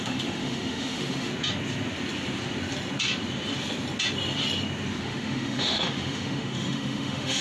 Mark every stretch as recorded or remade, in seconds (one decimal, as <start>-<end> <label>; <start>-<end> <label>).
0.0-1.3 remade; 1.3-5.0 recorded; 5.0-7.4 remade